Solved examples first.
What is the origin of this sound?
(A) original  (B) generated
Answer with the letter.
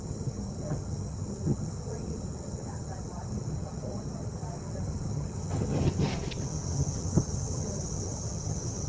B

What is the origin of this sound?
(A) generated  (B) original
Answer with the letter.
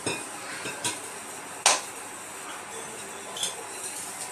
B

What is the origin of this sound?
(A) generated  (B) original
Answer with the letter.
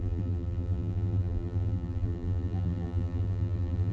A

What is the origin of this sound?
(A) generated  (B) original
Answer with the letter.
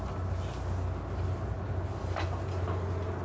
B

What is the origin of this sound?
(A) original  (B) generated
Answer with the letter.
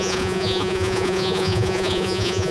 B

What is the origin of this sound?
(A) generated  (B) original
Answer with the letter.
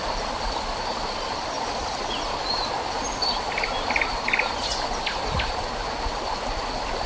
B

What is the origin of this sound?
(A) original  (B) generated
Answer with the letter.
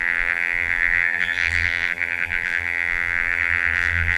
B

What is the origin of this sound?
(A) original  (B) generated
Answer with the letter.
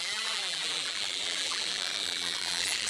B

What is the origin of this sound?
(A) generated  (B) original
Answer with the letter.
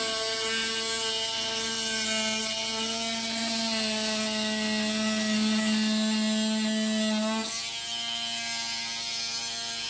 B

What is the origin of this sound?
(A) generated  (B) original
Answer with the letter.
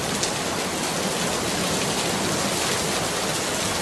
B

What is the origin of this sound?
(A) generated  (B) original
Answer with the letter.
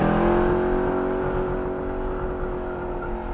B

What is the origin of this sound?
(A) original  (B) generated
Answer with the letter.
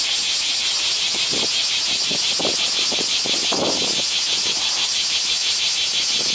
A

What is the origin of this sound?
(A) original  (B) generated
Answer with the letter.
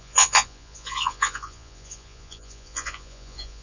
B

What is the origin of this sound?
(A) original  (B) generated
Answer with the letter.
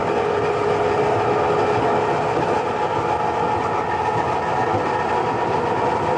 A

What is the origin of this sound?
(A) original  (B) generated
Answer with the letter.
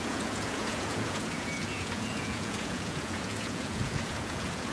B